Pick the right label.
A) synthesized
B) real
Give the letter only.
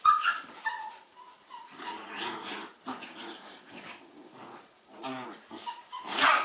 A